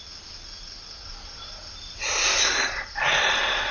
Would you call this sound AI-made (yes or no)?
no